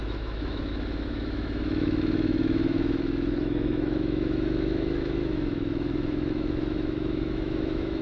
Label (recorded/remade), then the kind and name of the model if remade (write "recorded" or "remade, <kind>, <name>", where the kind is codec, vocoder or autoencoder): remade, autoencoder, DAC-VAE